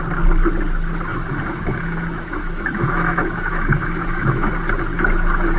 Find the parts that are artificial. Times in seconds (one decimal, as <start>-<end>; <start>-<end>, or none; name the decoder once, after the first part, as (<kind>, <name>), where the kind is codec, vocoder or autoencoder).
1.1-4.5 (autoencoder, DAC-VAE)